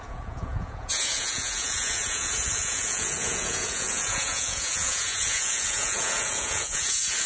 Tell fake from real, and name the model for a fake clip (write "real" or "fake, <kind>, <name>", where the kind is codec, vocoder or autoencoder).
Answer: fake, vocoder, Vocos